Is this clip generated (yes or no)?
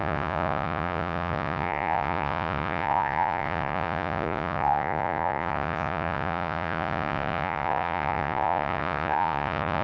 yes